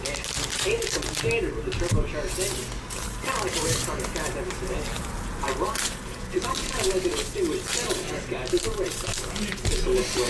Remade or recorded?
recorded